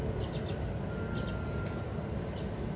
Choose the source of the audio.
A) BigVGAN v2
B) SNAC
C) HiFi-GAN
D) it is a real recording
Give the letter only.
D